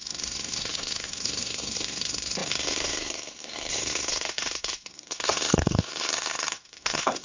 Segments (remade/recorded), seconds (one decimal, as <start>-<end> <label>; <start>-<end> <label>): 0.0-7.2 remade